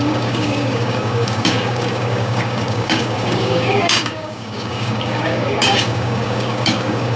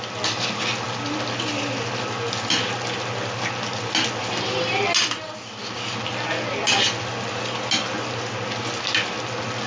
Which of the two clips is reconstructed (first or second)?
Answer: first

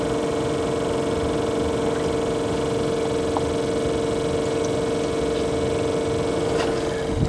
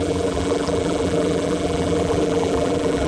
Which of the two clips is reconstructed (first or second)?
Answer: second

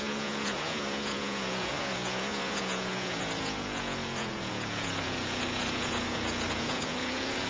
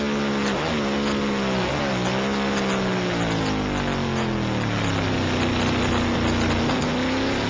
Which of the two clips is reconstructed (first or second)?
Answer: first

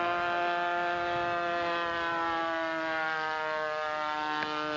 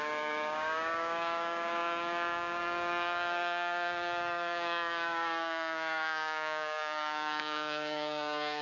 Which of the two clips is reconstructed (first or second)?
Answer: second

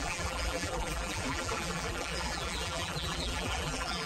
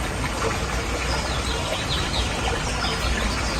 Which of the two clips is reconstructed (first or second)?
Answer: first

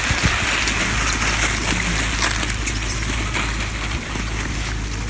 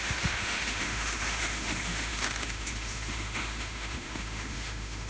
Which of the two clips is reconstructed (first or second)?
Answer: second